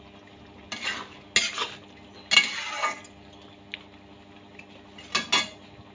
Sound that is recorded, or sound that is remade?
recorded